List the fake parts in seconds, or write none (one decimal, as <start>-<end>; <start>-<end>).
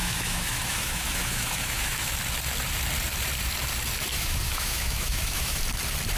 0.0-2.1; 4.1-5.6